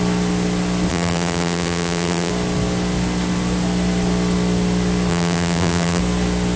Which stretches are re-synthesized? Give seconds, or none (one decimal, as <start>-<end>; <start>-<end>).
0.9-2.3; 5.1-6.0